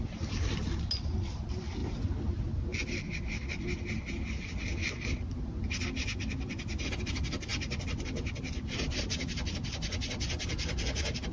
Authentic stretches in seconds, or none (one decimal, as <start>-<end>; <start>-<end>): 0.0-11.3